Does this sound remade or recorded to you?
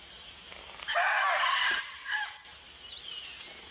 recorded